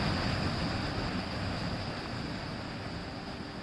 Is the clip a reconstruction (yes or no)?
no